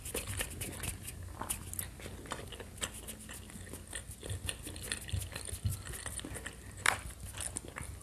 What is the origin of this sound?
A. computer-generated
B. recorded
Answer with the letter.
B